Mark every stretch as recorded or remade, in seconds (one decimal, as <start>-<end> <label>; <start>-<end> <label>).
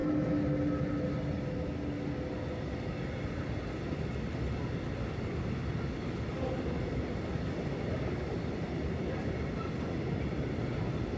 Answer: 0.0-11.2 recorded